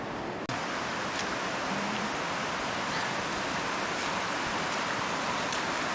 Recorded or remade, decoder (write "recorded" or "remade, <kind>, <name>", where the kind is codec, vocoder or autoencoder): recorded